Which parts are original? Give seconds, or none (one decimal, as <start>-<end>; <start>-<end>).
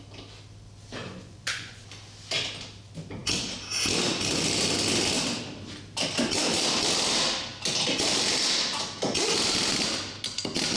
0.0-1.0; 1.8-10.8